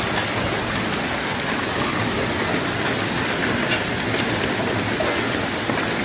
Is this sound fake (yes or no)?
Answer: no